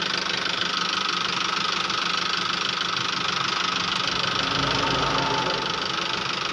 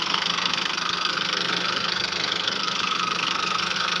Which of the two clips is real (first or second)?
first